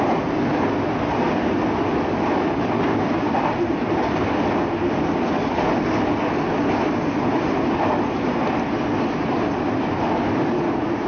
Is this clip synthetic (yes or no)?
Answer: no